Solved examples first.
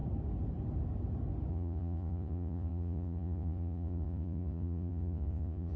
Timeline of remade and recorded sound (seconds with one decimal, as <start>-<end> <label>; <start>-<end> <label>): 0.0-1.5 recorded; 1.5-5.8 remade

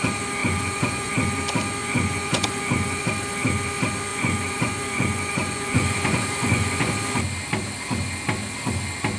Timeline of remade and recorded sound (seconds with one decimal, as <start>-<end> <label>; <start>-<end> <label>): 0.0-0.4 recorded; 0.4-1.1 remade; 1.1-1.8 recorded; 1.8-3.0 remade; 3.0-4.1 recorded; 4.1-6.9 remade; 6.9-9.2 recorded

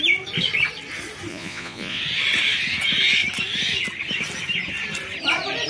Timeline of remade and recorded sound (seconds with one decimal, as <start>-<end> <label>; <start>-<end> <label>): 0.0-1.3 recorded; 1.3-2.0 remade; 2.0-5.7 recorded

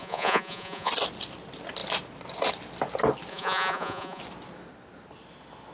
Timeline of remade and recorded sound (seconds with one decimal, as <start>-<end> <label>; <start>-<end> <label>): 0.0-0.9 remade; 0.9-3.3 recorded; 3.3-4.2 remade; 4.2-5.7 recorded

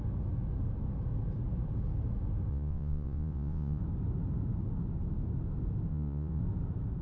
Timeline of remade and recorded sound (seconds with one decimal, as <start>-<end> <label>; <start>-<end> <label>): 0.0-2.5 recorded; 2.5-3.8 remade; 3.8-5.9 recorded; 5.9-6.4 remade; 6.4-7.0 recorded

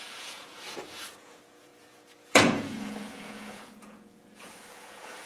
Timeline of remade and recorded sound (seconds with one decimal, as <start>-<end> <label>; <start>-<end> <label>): 0.0-5.3 remade

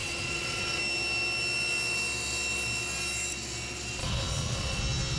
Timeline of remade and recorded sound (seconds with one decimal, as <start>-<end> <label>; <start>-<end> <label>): 0.0-0.8 remade; 0.8-4.0 recorded; 4.0-4.8 remade; 4.8-5.2 recorded